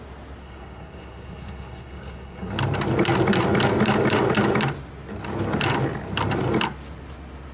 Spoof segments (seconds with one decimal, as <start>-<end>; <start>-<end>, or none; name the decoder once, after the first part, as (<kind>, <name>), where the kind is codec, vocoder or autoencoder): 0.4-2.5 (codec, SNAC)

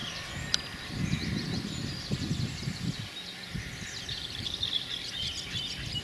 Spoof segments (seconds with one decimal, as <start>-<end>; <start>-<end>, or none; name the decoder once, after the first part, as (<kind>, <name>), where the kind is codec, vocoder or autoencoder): 0.0-6.0 (vocoder, BigVGAN v2)

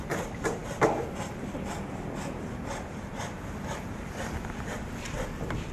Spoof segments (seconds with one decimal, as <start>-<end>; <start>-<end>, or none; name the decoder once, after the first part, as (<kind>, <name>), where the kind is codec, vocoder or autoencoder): 0.0-0.6 (vocoder, BigVGAN v2); 1.8-5.7